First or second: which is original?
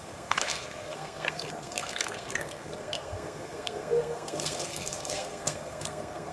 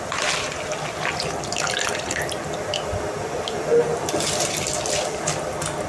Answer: second